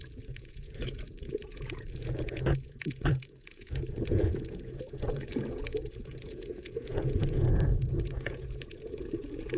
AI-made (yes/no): yes